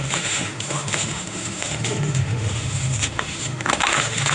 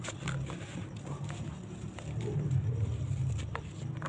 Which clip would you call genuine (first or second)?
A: second